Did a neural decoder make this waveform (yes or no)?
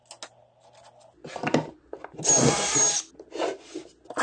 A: no